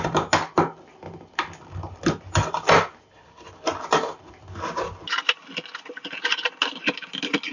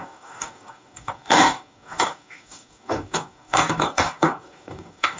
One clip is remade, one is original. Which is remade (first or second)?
second